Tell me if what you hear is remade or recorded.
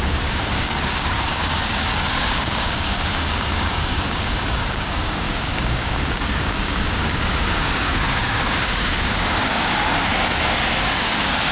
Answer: remade